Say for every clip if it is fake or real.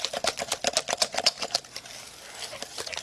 real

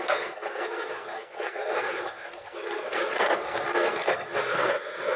fake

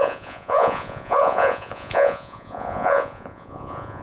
fake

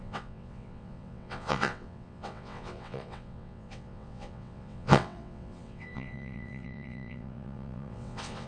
fake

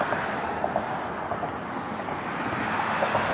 real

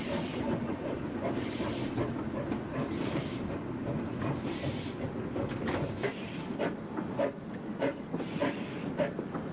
real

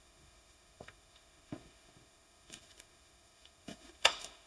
fake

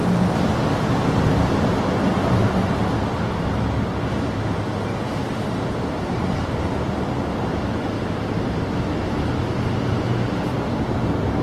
real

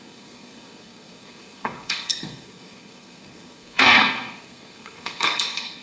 fake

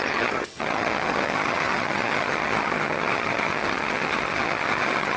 fake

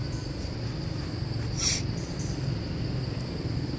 real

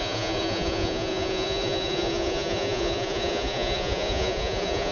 fake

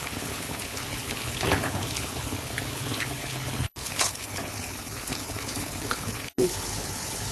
fake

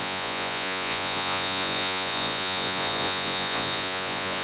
fake